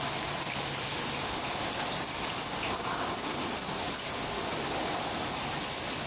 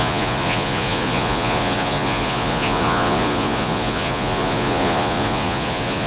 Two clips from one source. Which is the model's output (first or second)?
second